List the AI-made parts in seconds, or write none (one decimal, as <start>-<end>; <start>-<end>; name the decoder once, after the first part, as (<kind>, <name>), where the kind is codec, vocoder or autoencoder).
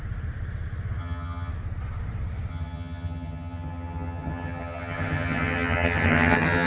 1.0-1.5 (vocoder, HiFi-GAN); 2.5-6.7